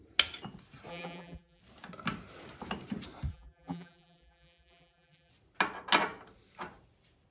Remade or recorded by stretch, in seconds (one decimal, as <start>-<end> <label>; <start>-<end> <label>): 0.0-0.9 recorded; 0.9-1.6 remade; 1.6-3.3 recorded; 3.3-5.3 remade; 5.3-7.3 recorded